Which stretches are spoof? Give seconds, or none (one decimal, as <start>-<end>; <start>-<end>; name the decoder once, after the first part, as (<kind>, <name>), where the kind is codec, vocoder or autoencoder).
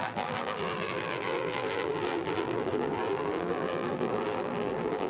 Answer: 0.0-5.1 (vocoder, BigVGAN v2)